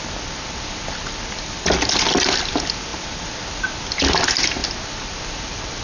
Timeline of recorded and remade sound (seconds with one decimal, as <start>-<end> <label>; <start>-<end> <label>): 0.0-5.8 recorded

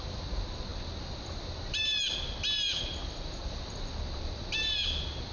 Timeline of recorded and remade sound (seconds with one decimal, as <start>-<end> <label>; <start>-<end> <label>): 0.0-5.3 recorded

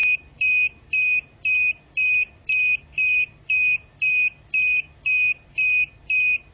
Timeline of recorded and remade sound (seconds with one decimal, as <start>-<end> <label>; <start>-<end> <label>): 0.0-6.5 recorded